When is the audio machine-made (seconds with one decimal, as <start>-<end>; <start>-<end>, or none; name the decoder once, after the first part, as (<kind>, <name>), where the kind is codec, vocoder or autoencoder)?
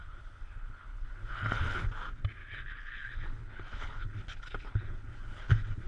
0.0-1.9 (codec, HILCodec); 2.4-5.9